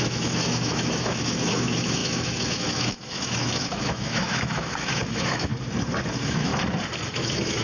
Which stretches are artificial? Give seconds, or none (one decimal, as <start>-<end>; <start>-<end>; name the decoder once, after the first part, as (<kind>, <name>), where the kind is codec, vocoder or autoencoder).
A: 0.0-5.5 (autoencoder, DAC-VAE); 6.1-6.5; 7.1-7.6